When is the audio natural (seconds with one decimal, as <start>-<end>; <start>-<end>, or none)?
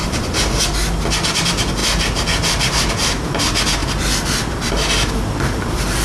0.6-6.0